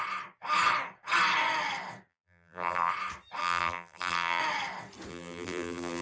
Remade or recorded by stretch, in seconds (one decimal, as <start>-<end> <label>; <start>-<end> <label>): 0.0-2.1 recorded; 2.1-2.9 remade; 2.9-3.4 recorded; 3.4-4.4 remade; 4.4-5.1 recorded; 5.1-6.0 remade